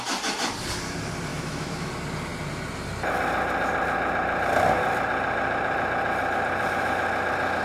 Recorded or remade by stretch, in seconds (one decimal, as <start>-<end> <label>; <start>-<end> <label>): 0.0-1.3 recorded; 1.3-1.9 remade; 1.9-7.6 recorded